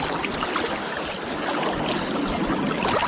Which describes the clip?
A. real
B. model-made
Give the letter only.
A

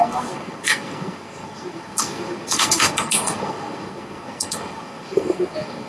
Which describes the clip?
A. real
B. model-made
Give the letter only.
B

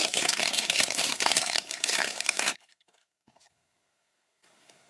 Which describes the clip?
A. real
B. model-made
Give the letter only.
B